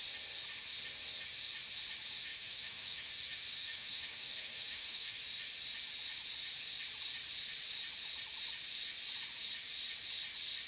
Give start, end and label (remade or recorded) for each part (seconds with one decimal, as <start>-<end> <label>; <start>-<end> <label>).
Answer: 0.0-2.3 recorded; 2.3-3.1 remade; 3.1-3.6 recorded; 3.6-5.2 remade; 5.2-10.7 recorded